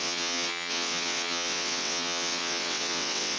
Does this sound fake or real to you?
fake